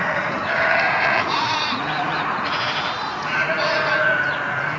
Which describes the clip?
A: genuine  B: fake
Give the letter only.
B